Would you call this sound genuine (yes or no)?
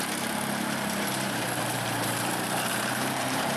no